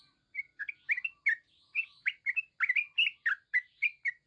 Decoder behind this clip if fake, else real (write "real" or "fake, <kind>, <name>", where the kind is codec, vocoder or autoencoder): real